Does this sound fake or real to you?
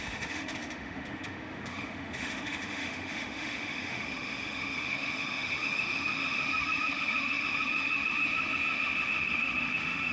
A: fake